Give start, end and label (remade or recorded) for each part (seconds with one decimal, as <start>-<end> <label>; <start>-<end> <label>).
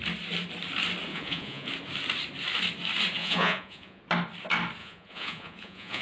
0.0-1.1 recorded; 1.1-1.7 remade; 1.7-3.2 recorded; 3.2-4.0 remade; 4.0-4.8 recorded; 4.8-6.0 remade